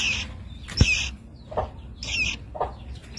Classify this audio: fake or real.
real